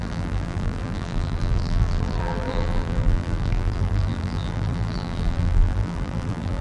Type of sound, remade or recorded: remade